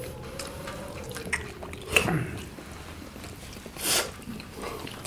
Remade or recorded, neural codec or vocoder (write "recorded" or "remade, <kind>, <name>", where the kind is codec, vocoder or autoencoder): recorded